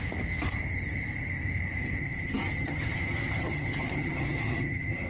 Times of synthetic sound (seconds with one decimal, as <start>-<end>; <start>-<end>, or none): 2.0-5.1

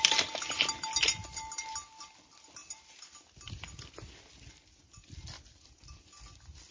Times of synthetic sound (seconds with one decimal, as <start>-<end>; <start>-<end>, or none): none

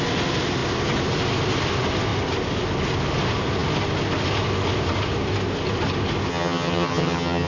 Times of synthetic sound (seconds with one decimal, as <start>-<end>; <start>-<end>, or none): 6.3-7.5

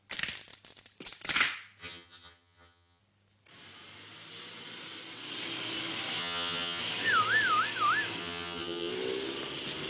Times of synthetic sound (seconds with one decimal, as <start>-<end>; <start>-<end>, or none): 1.8-3.0; 6.2-6.8; 8.2-8.9

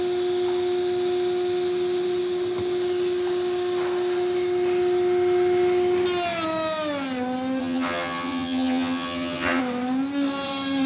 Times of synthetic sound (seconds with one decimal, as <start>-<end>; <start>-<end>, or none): 7.6-9.6